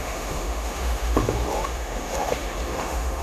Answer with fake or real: fake